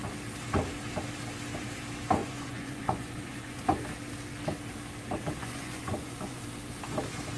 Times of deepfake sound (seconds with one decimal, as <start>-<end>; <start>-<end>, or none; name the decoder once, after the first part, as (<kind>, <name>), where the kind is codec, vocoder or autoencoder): 2.2-3.6 (vocoder, Vocos); 5.4-6.4